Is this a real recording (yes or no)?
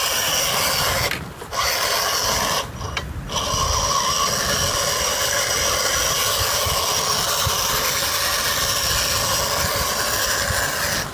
yes